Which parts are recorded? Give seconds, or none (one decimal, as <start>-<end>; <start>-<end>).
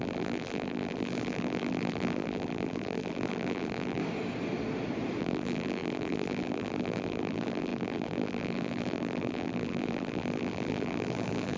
4.0-5.2